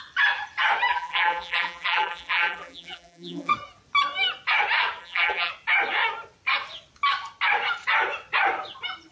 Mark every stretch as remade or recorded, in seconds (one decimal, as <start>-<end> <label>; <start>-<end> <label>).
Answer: 0.0-0.9 recorded; 0.9-3.5 remade; 3.5-5.0 recorded; 5.0-5.5 remade; 5.5-9.1 recorded